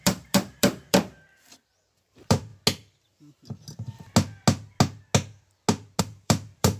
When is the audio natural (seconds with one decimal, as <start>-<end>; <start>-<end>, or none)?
2.5-6.0